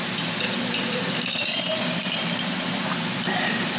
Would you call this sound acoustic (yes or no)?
no